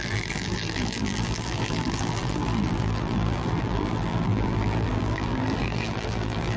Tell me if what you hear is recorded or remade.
remade